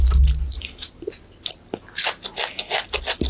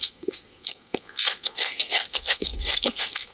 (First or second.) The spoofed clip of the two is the second